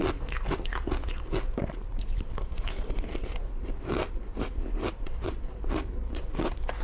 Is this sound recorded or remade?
remade